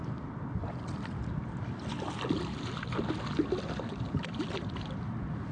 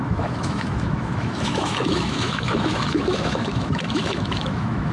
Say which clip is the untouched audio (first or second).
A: first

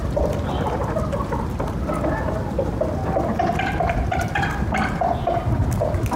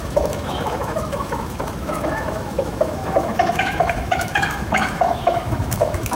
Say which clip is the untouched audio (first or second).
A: first